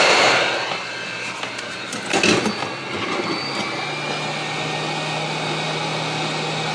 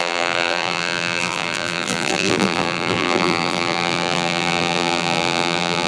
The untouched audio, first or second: first